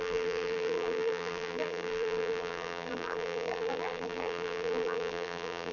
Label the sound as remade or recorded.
remade